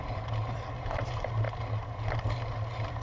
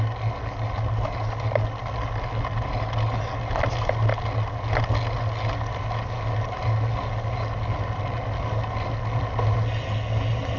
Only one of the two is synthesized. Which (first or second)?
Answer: first